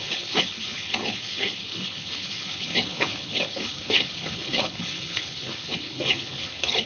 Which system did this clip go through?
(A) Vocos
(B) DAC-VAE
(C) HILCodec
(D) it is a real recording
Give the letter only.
C